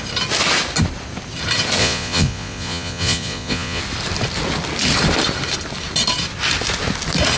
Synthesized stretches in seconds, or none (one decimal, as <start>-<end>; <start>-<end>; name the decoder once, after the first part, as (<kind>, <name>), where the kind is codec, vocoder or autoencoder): 1.8-3.8 (vocoder, Vocos)